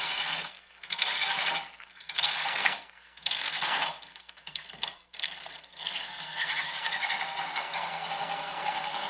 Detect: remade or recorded remade